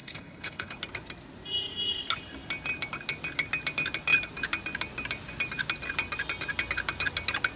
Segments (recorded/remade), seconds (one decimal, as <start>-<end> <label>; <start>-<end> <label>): 0.0-0.8 remade; 0.8-7.6 recorded